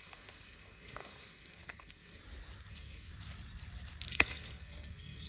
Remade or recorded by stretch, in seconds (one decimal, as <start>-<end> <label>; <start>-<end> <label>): 0.0-2.2 remade; 2.2-2.7 recorded; 2.7-3.1 remade; 3.1-4.1 recorded; 4.1-5.3 remade